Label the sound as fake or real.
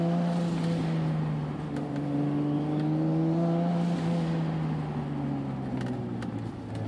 real